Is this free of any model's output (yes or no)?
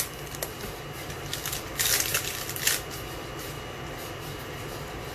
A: yes